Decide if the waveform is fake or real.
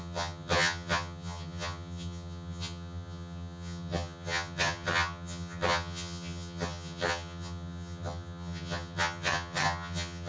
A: fake